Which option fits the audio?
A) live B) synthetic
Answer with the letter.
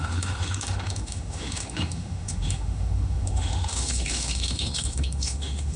B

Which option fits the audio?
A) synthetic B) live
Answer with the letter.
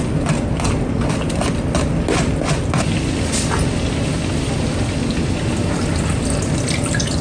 B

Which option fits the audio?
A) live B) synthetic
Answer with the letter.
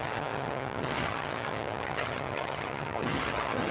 B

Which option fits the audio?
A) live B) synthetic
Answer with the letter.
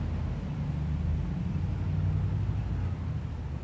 A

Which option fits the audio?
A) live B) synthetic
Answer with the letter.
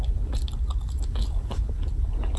A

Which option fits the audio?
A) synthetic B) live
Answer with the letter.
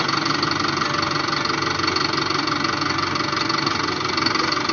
B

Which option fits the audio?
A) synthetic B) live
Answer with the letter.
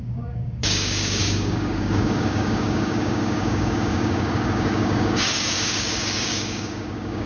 A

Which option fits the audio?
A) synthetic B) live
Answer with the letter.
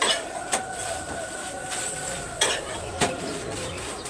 B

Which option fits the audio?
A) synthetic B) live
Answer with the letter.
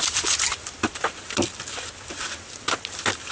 A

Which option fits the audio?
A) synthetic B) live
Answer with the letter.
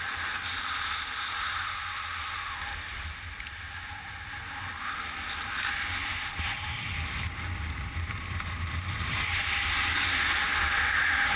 B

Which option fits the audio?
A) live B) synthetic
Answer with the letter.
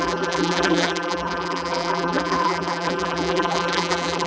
B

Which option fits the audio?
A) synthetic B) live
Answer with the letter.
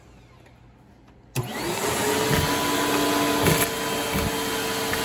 B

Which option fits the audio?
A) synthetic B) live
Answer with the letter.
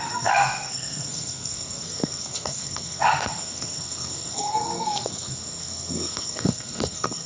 A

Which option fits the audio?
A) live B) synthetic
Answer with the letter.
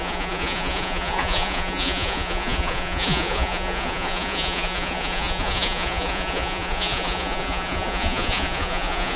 B